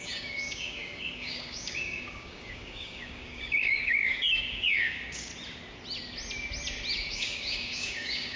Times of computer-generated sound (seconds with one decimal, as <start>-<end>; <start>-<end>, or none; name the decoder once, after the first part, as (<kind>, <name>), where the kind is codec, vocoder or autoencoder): 0.0-5.3 (codec, DAC); 7.1-8.4